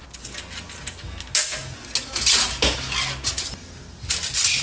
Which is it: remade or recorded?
recorded